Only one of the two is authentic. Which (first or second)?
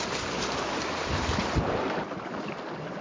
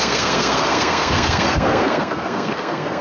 first